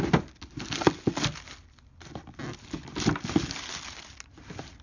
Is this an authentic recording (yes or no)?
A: yes